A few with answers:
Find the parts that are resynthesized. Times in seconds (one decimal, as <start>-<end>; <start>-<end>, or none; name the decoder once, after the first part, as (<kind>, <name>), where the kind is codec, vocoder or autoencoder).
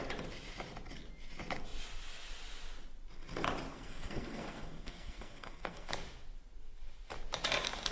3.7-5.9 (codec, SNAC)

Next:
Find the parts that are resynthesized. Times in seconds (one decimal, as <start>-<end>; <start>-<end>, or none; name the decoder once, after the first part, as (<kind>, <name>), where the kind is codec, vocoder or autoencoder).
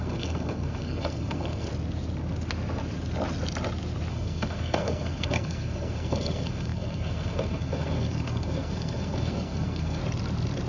0.0-1.7 (codec, SNAC); 4.1-10.0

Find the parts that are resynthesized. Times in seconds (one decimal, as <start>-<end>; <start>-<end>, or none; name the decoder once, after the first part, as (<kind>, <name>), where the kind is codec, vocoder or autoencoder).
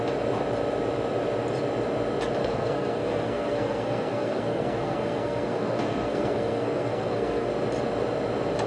2.4-7.5 (codec, SNAC)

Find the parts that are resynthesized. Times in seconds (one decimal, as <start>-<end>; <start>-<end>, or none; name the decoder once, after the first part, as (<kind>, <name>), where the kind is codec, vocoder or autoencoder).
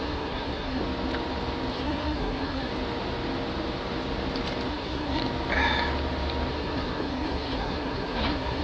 0.0-0.8 (codec, SNAC); 1.7-2.7; 4.7-5.2; 6.5-8.6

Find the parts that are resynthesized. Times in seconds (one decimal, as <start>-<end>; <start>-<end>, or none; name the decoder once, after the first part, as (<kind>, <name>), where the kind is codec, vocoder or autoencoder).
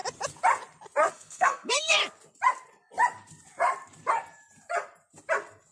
1.1-2.0 (codec, SNAC)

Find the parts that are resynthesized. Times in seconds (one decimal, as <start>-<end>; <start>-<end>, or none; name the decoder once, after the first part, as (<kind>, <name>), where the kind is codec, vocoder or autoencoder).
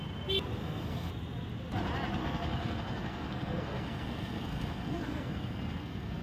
0.6-1.1 (codec, SNAC); 2.2-6.2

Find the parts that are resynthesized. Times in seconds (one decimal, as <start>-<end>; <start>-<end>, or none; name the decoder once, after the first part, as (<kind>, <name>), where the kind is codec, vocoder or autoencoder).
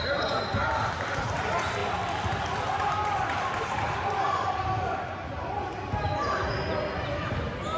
none